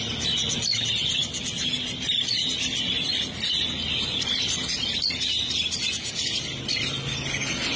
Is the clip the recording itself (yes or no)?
yes